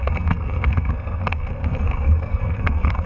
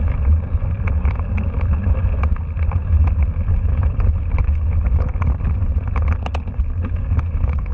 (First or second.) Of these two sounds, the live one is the second